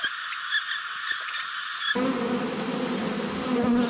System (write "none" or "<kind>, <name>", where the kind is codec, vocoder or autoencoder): none